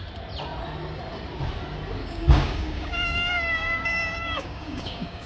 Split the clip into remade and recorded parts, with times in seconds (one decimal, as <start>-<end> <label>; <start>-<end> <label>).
0.0-2.0 recorded; 2.0-5.3 remade